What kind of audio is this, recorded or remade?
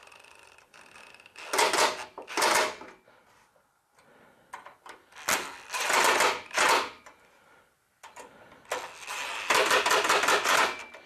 recorded